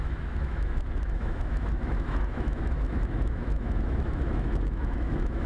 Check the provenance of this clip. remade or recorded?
remade